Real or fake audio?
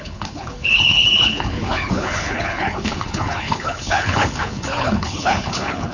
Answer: fake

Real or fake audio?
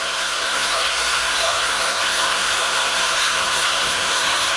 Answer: fake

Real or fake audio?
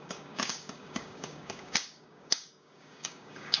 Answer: fake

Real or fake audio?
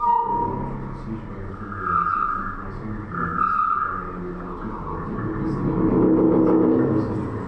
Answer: real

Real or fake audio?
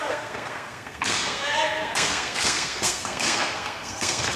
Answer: fake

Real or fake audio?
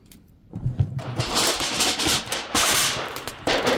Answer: fake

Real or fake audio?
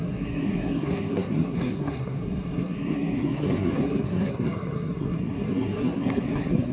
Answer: fake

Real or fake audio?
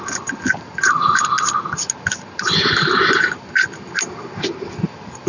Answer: real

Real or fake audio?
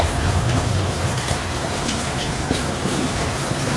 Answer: fake